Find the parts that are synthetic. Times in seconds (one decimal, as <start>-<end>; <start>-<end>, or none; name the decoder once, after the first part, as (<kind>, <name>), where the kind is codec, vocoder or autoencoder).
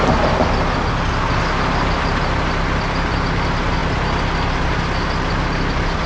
none